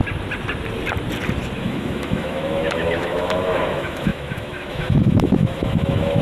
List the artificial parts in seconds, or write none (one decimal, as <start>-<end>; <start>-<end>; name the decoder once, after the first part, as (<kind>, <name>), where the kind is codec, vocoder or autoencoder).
1.6-6.2 (autoencoder, DAC-VAE)